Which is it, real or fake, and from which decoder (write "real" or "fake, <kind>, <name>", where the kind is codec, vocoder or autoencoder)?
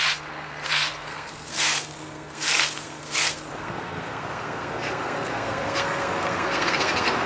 fake, codec, SNAC